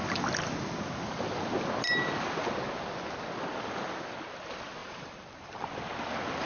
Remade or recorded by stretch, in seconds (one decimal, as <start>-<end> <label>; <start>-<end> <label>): 0.0-4.8 recorded; 4.8-5.6 remade; 5.6-6.5 recorded